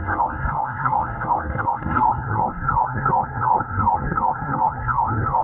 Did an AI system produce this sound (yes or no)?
yes